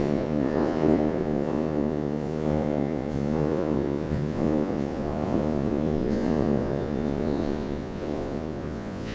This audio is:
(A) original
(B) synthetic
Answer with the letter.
B